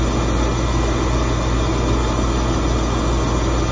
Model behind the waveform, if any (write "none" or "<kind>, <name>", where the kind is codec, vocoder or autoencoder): none